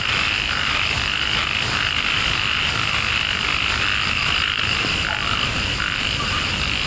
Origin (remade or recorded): recorded